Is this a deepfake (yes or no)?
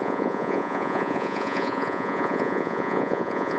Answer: yes